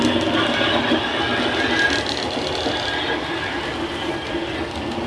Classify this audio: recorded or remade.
recorded